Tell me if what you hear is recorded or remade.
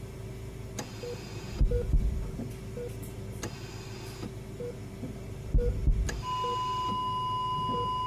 recorded